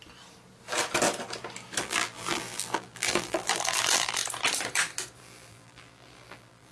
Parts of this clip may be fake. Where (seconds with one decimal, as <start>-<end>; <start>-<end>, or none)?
1.8-4.2; 5.2-6.7